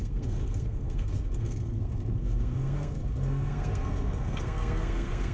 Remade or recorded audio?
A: remade